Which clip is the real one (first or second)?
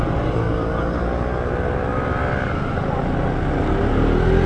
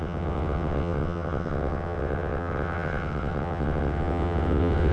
first